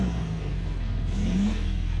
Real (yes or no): no